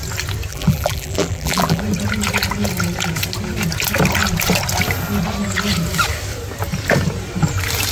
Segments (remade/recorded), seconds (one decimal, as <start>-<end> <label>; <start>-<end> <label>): 0.0-0.5 recorded; 0.5-1.8 remade; 1.8-7.9 recorded